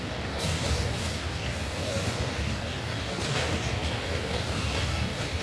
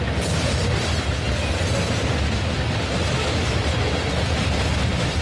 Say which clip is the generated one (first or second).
first